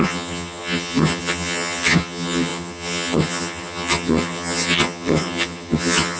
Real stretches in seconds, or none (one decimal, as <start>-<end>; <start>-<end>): none